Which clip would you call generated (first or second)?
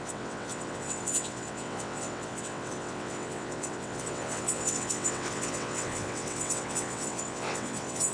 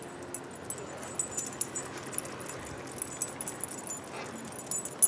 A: first